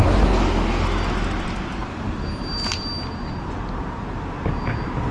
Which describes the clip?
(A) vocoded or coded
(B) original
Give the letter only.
B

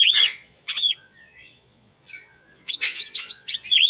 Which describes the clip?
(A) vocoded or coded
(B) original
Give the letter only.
A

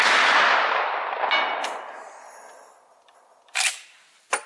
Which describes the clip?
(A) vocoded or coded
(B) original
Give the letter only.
B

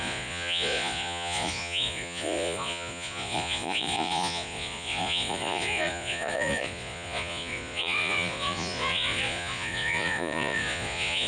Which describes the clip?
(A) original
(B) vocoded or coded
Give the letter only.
B